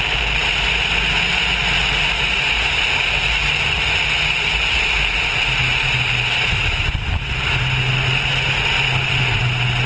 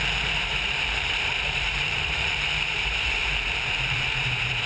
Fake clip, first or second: second